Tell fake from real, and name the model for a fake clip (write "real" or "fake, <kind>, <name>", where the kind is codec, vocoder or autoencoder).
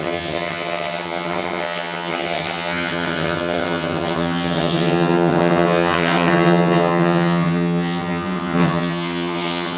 fake, vocoder, HiFi-GAN